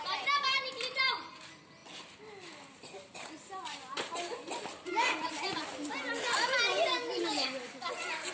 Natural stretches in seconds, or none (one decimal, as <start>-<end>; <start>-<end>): 0.0-6.9; 7.9-8.3